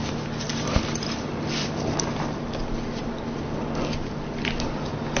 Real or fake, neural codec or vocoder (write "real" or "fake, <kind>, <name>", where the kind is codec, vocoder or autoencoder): real